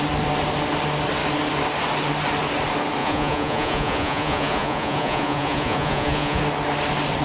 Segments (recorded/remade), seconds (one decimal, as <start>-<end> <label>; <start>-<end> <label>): 0.0-3.0 recorded; 3.0-6.4 remade; 6.4-7.2 recorded